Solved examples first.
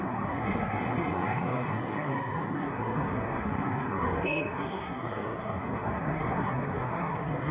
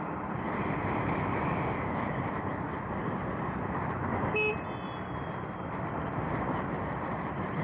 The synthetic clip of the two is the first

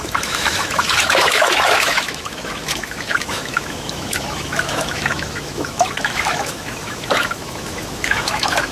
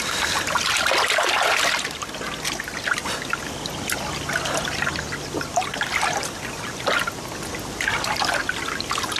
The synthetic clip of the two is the first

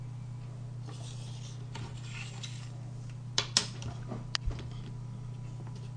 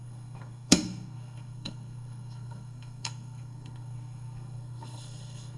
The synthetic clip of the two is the second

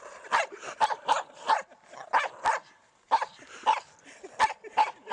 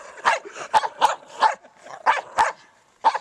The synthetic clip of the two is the first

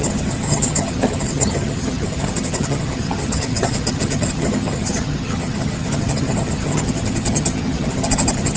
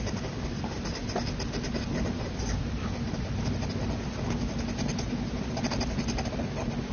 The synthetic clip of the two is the first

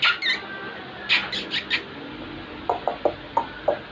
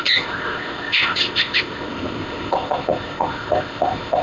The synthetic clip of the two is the second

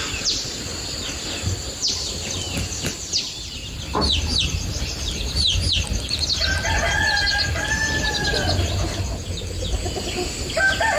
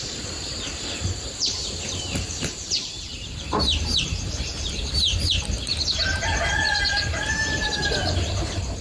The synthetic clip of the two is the second